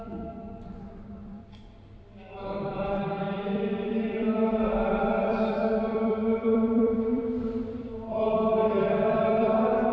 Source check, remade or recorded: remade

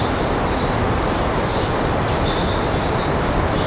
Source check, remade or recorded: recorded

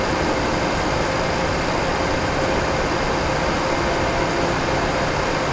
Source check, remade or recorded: recorded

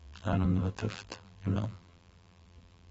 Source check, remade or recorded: remade